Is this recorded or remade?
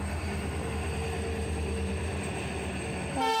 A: recorded